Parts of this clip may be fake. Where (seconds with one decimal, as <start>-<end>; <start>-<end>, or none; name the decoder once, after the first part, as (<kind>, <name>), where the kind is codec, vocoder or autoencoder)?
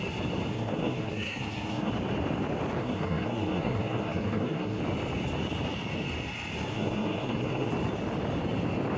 0.5-1.9 (codec, SNAC); 2.8-4.8; 6.7-7.7